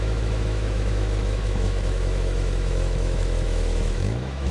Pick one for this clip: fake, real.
fake